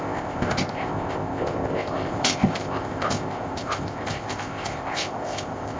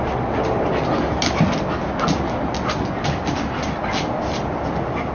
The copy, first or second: first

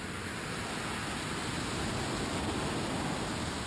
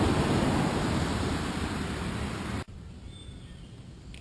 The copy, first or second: second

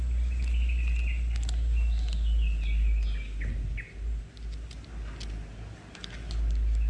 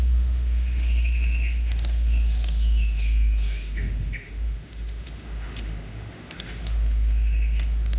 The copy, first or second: second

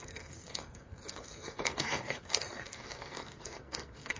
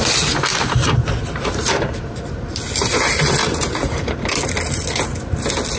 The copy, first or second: first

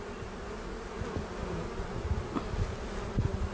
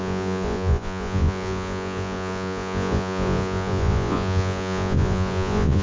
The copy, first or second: second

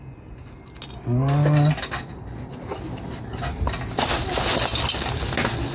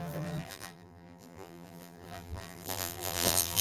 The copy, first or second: second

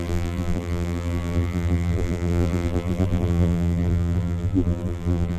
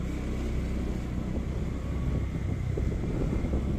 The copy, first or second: first